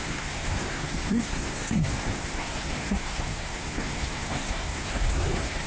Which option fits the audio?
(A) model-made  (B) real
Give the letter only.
A